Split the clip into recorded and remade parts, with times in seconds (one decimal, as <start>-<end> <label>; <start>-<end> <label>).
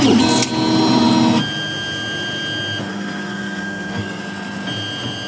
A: 0.0-2.9 recorded; 2.9-4.2 remade; 4.2-5.3 recorded